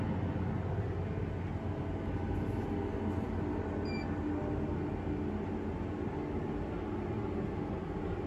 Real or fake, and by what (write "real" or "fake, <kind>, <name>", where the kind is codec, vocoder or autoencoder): real